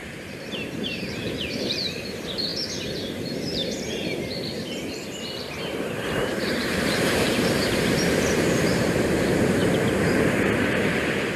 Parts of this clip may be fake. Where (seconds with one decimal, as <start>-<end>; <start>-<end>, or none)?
0.0-9.6; 10.2-11.4